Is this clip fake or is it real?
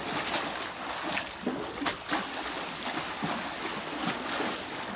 real